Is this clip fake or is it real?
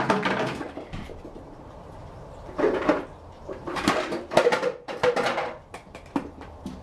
fake